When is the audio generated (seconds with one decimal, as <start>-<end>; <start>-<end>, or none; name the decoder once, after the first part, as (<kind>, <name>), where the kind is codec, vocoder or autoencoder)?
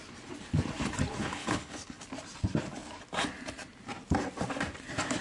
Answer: 1.2-2.0 (codec, HILCodec)